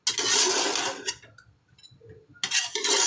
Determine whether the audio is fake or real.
real